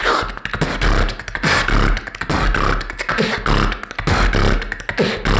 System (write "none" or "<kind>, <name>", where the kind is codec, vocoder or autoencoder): none